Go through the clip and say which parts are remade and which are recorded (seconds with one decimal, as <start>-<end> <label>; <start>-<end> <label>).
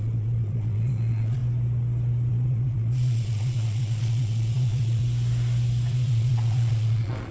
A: 0.0-1.4 remade; 1.4-2.3 recorded; 2.3-5.0 remade; 5.0-5.9 recorded; 5.9-7.3 remade